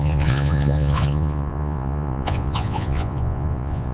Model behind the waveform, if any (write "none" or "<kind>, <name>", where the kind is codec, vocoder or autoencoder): vocoder, Vocos